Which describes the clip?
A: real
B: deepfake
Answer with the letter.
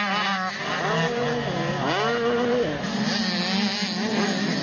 A